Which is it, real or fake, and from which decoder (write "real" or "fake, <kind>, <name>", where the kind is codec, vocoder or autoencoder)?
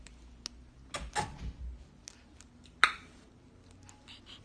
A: real